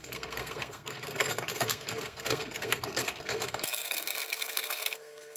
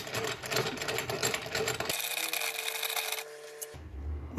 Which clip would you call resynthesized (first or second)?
first